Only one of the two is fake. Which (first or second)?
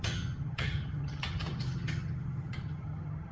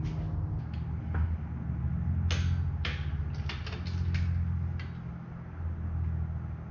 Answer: first